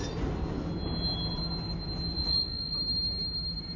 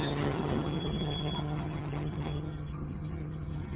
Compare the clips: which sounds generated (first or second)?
second